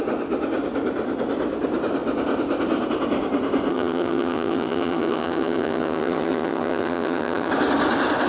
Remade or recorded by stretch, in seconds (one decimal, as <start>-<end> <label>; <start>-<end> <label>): 0.0-3.7 recorded; 3.7-7.5 remade; 7.5-8.3 recorded